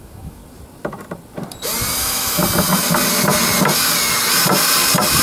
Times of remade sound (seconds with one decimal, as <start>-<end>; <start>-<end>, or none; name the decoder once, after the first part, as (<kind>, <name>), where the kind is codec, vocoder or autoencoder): 0.0-0.4 (autoencoder, DAC-VAE); 2.0-2.4